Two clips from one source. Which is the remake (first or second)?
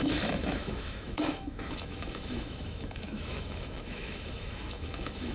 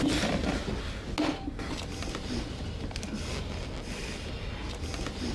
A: first